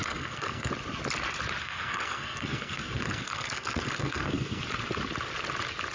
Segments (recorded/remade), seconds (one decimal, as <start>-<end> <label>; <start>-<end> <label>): 0.0-0.7 remade; 0.7-1.6 recorded; 1.6-4.6 remade; 4.6-5.9 recorded